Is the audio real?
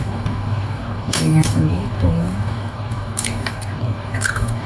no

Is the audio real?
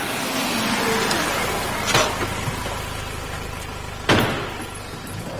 yes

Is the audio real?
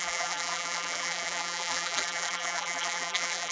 no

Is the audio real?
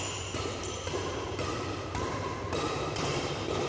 no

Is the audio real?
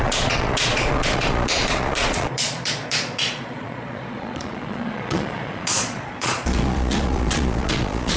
no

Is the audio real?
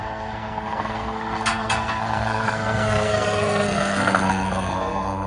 no